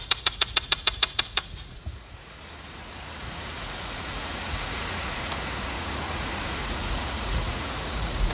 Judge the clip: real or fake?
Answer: fake